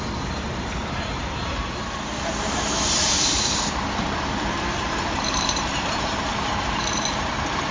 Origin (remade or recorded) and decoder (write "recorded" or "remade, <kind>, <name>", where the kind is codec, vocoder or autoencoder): remade, vocoder, BigVGAN v2